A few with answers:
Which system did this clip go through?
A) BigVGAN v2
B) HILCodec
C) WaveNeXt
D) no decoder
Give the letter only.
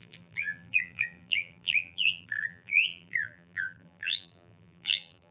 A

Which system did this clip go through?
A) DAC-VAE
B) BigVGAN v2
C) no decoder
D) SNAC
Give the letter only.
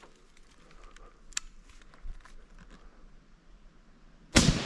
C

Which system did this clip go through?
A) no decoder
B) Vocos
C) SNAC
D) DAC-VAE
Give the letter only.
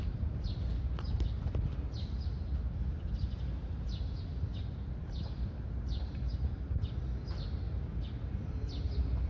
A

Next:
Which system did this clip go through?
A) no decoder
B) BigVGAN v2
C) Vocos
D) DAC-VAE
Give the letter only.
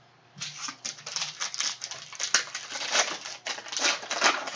A